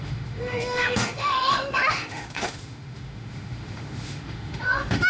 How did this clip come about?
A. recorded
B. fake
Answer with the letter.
B